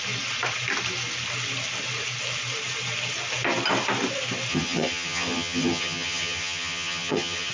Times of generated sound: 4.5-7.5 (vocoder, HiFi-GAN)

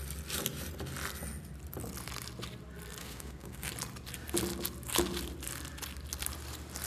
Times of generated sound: 3.0-3.7 (codec, SNAC)